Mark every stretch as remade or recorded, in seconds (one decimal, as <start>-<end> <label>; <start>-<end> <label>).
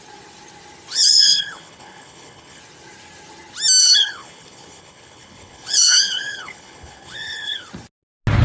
0.0-0.9 recorded; 0.9-2.6 remade; 2.6-3.8 recorded; 3.8-7.7 remade; 7.7-8.4 recorded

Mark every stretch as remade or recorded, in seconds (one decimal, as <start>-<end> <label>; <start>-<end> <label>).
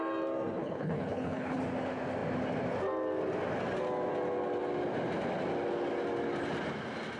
0.0-0.6 recorded; 0.6-1.6 remade; 1.6-7.2 recorded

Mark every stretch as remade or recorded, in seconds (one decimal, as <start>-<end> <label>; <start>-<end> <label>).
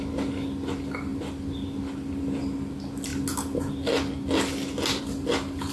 0.0-5.7 recorded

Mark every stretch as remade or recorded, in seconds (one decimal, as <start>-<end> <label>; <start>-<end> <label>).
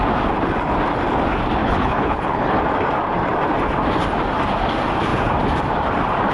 0.0-1.6 recorded; 1.6-2.6 remade; 2.6-6.3 recorded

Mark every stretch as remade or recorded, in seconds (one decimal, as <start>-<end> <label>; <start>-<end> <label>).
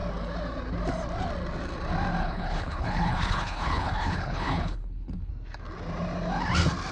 0.0-2.2 recorded; 2.2-5.3 remade; 5.3-6.9 recorded